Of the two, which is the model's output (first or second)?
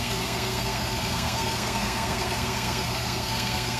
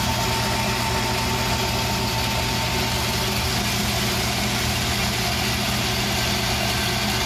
first